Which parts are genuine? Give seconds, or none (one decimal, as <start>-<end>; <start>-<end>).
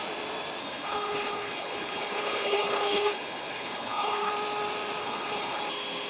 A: 0.0-0.6; 4.3-5.0; 5.6-6.1